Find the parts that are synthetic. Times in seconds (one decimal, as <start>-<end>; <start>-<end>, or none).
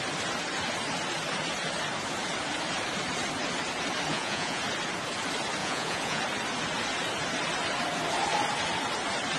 4.1-4.6; 5.6-6.2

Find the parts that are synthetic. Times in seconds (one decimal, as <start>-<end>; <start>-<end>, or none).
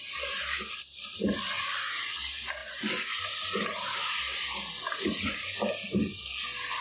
none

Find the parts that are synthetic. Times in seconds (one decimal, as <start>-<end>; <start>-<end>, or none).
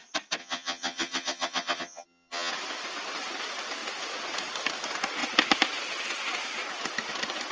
0.4-2.5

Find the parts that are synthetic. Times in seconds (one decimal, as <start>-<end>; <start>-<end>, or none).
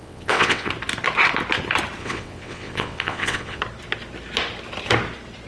0.0-0.7; 2.0-3.6